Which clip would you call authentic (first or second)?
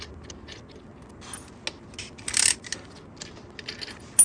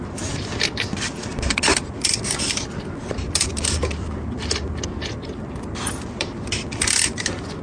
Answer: first